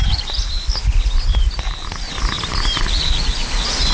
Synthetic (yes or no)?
no